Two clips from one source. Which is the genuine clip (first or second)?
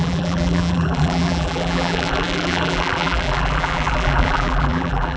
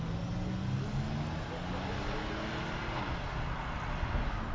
second